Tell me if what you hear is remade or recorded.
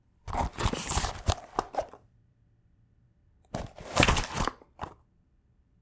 remade